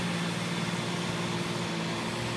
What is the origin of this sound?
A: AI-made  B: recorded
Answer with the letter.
B